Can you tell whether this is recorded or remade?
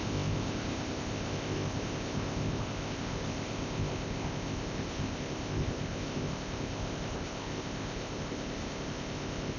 remade